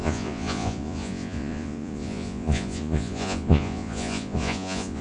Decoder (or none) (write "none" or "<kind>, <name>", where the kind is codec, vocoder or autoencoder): vocoder, Vocos